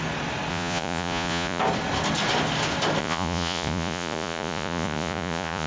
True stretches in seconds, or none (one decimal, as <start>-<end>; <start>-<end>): 0.0-0.5; 1.6-3.0